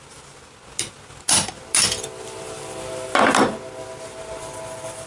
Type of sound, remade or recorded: recorded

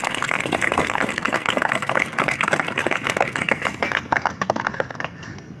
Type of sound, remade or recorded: remade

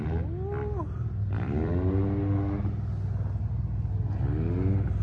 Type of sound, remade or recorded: recorded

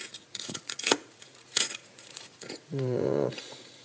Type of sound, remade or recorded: remade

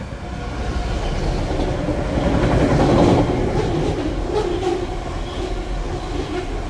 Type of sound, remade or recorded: recorded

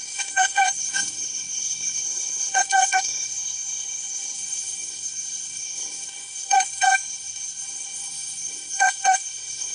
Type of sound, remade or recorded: remade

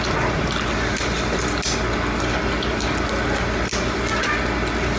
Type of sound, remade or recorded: recorded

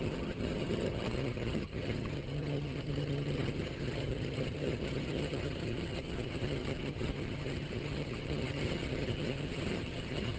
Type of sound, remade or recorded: remade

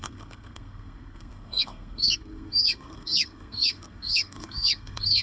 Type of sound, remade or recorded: remade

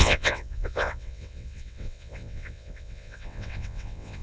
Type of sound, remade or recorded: remade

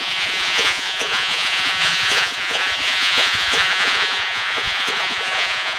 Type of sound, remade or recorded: remade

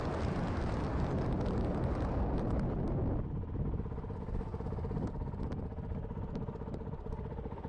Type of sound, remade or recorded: recorded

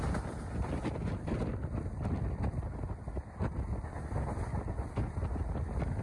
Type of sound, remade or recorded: recorded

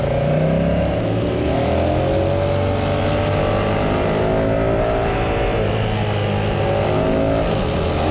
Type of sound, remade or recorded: recorded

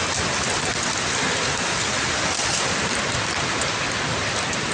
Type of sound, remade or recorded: recorded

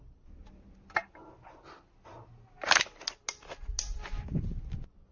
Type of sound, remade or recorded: recorded